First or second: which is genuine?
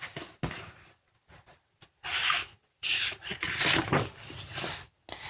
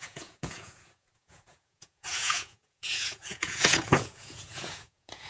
first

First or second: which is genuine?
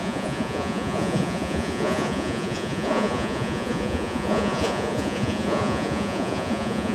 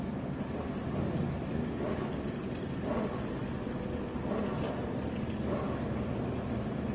second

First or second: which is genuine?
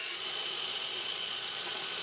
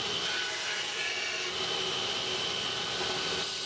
second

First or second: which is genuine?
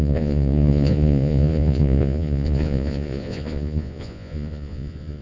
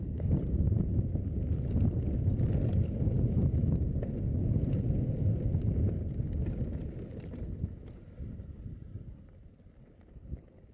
second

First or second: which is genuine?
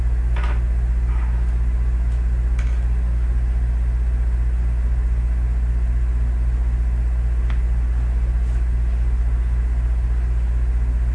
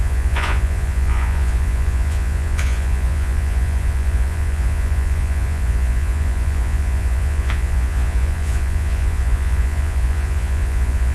first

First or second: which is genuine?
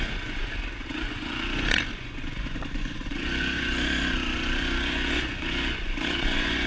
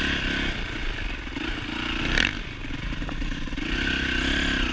second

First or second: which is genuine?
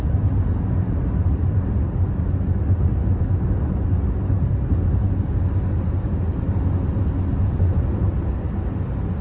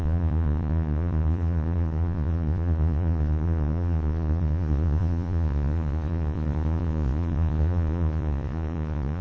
first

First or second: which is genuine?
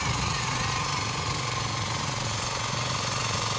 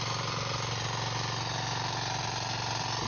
second